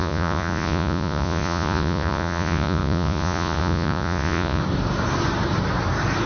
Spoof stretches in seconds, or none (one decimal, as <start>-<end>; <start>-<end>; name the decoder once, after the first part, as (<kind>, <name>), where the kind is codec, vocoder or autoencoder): 0.0-4.6 (vocoder, Vocos)